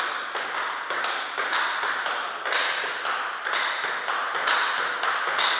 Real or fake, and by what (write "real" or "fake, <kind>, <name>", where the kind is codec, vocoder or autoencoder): real